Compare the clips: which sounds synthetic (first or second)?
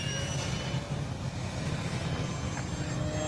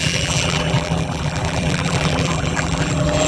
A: second